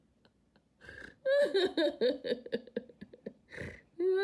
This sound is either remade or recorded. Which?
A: recorded